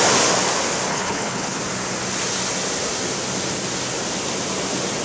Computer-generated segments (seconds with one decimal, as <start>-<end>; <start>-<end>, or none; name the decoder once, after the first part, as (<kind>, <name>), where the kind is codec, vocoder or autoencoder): 0.9-1.6 (codec, HILCodec)